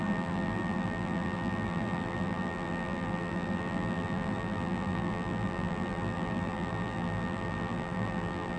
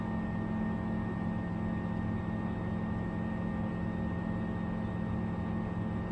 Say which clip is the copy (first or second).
first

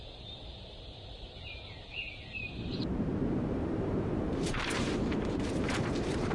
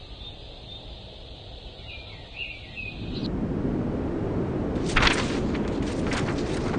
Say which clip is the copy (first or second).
first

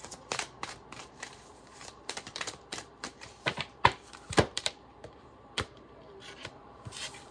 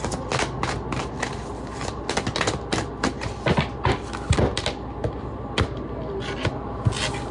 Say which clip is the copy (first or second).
first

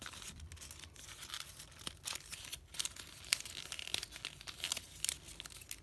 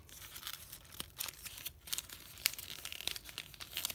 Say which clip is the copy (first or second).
second